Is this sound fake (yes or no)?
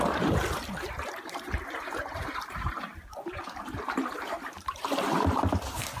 yes